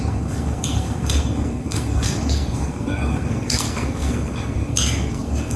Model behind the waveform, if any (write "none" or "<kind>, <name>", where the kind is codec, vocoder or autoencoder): codec, SNAC